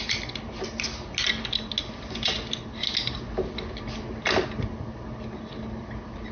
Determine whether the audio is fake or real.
real